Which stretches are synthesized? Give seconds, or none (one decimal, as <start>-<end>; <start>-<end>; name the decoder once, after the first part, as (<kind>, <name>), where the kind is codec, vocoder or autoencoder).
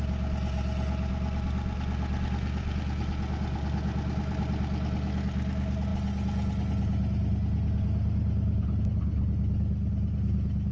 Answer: none